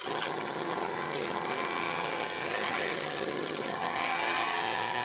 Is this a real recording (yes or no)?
no